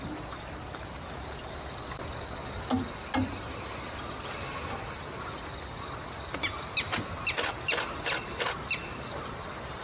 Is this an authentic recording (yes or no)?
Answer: yes